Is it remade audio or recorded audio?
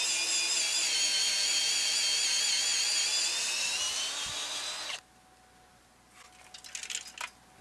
recorded